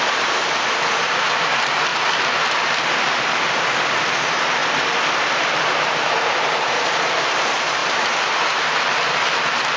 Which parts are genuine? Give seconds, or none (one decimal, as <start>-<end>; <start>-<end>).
1.9-3.9; 4.6-5.4